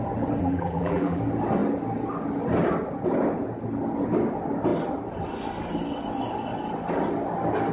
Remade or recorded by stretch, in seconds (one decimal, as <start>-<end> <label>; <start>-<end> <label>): 0.0-0.4 recorded; 0.4-1.2 remade; 1.2-7.7 recorded